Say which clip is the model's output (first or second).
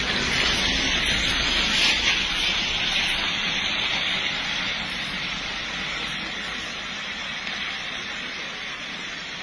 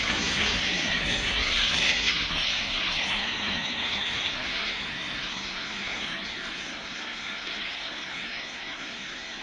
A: second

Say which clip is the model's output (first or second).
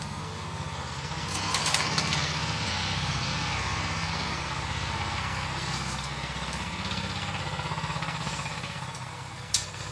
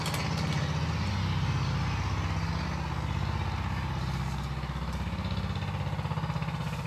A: first